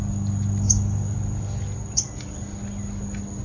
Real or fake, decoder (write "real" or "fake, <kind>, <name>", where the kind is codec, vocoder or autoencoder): real